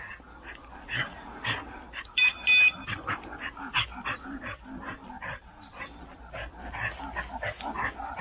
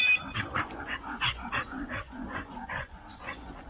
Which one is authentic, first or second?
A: first